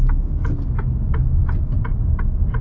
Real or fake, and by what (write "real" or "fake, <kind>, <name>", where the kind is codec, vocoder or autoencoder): real